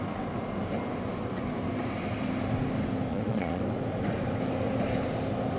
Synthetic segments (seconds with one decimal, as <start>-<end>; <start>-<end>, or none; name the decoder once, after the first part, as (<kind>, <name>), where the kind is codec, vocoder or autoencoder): 3.1-3.6 (vocoder, Vocos)